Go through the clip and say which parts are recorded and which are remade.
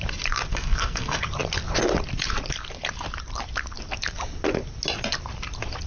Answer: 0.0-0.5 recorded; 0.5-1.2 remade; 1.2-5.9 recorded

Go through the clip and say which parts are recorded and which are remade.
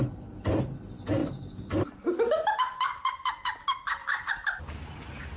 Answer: 0.0-1.2 recorded; 1.2-1.9 remade; 1.9-4.0 recorded; 4.0-4.6 remade; 4.6-5.4 recorded